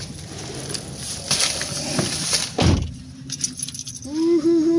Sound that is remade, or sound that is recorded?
recorded